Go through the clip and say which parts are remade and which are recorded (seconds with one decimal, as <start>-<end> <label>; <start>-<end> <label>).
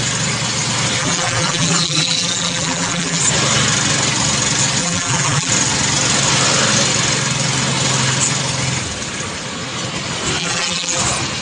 0.0-1.0 recorded; 1.0-3.2 remade; 3.2-4.8 recorded; 4.8-5.5 remade; 5.5-10.4 recorded; 10.4-11.0 remade; 11.0-11.4 recorded